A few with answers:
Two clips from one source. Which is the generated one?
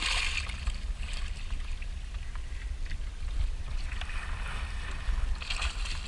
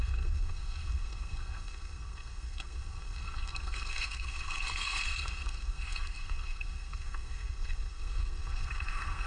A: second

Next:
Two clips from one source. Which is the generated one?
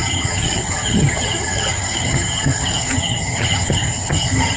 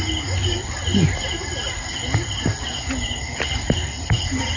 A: first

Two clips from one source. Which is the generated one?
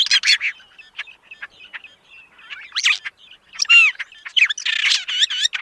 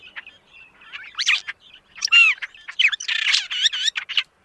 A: second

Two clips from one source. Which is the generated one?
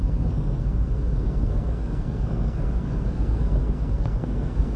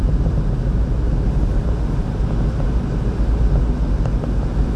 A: first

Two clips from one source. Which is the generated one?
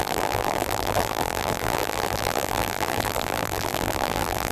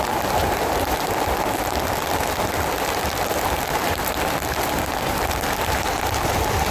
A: first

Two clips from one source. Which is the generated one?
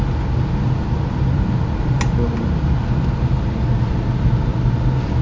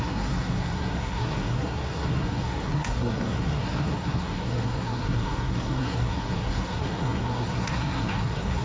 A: second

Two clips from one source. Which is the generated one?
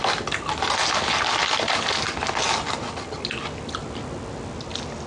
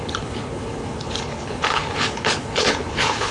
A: second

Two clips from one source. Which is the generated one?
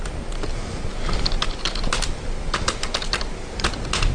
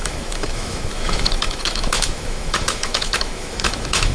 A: second